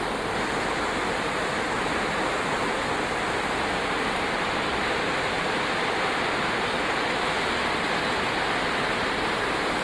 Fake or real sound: real